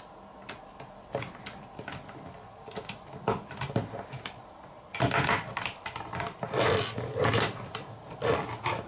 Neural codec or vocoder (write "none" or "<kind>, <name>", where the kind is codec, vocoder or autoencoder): none